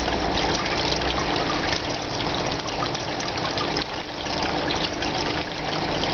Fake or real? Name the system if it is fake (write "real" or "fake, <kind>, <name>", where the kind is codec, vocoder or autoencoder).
fake, vocoder, BigVGAN v2